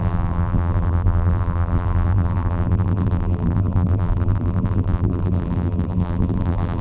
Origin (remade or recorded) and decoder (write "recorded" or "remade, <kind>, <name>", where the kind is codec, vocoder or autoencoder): remade, vocoder, BigVGAN v2